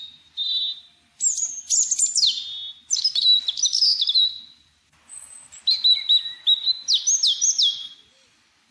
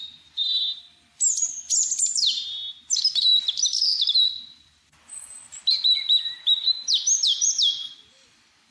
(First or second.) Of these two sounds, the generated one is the second